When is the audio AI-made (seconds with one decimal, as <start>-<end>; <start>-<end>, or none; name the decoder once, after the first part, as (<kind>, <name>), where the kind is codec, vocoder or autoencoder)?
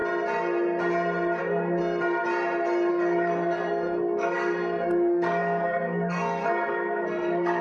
1.4-1.8 (codec, SNAC); 2.9-7.6